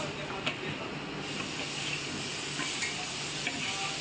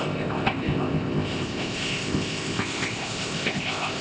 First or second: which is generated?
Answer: second